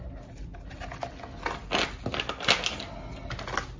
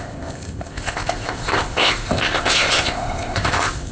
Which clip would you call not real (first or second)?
second